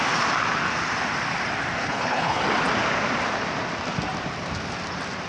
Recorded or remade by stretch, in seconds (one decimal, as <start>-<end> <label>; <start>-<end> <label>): 0.0-1.8 recorded; 1.8-2.4 remade; 2.4-5.3 recorded